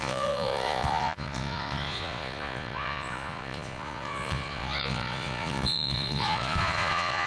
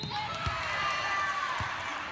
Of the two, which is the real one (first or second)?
second